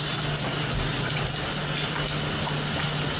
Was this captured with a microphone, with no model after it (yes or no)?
yes